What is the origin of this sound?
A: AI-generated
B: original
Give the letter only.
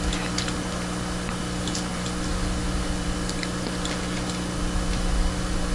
B